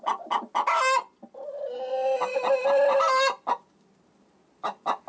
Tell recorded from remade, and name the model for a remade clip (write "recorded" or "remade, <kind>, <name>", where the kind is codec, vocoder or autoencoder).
recorded